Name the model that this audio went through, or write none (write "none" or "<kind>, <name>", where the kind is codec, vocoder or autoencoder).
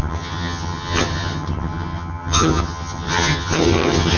vocoder, HiFi-GAN